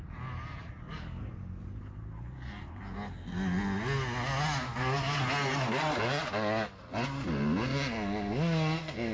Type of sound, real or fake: real